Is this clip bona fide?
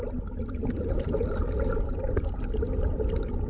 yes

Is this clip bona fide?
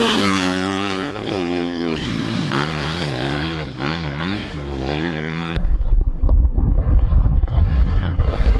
no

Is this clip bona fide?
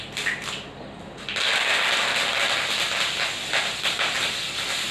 yes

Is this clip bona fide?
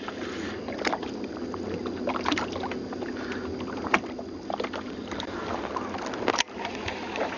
yes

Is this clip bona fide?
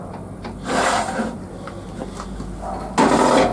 yes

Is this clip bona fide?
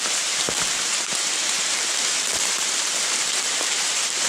no